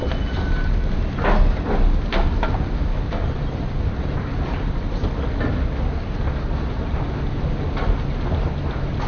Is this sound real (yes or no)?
yes